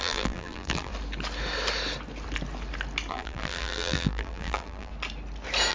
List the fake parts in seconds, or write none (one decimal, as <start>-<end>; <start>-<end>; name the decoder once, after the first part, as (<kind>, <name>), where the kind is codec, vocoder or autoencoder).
0.0-0.9 (vocoder, BigVGAN v2); 3.1-4.9